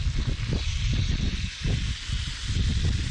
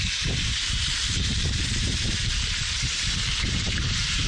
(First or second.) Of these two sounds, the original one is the first